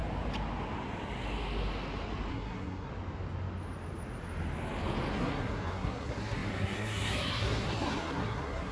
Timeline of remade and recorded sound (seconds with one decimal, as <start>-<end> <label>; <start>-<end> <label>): 0.0-2.3 recorded; 2.3-2.9 remade; 2.9-5.1 recorded; 5.1-8.7 remade